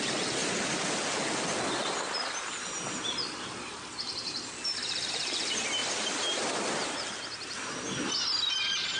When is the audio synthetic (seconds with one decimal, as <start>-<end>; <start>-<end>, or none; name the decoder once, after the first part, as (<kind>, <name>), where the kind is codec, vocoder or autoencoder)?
none